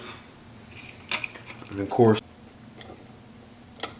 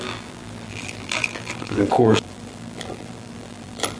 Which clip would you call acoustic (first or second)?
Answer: first